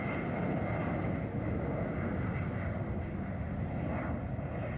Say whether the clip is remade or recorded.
recorded